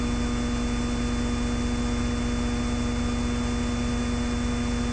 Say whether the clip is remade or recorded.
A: recorded